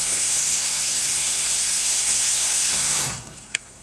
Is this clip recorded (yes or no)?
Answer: no